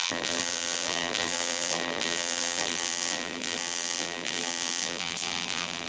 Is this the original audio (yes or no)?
no